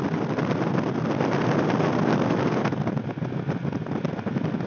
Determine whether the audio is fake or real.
real